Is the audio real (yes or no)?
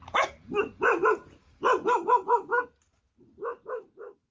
yes